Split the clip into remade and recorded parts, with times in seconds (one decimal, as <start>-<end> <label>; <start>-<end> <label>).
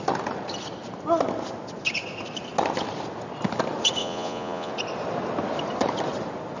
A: 0.0-4.0 recorded; 4.0-4.7 remade; 4.7-6.6 recorded